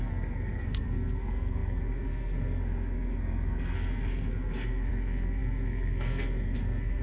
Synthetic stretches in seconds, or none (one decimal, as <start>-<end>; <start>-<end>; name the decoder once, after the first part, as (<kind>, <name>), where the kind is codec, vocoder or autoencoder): 0.0-7.0 (codec, SNAC)